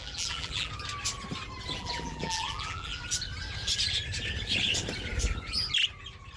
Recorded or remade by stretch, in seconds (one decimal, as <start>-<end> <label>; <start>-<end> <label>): 0.0-0.7 remade; 0.7-1.8 recorded; 1.8-3.0 remade; 3.0-6.4 recorded